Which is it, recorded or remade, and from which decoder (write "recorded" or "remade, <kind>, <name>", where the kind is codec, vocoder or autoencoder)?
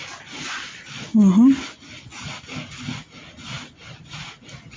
recorded